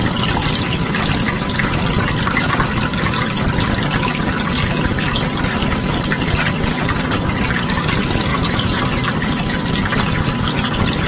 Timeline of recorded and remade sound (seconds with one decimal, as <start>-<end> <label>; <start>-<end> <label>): 0.0-8.3 recorded; 8.3-8.8 remade; 8.8-11.1 recorded